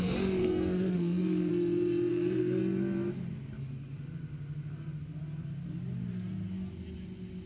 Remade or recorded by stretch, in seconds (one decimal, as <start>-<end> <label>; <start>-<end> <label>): 0.0-0.4 recorded; 0.4-1.5 remade; 1.5-2.1 recorded; 2.1-2.6 remade; 2.6-7.5 recorded